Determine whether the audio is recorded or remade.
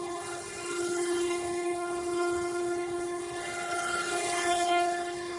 remade